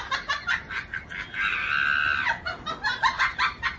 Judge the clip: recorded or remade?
recorded